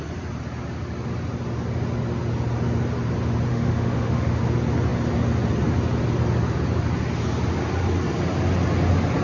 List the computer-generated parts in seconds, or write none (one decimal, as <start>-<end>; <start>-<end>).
3.5-4.4